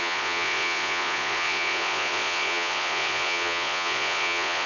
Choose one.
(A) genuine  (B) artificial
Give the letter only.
B